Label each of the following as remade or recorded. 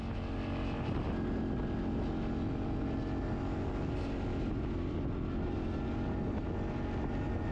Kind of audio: recorded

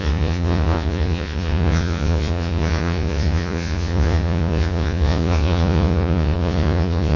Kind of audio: remade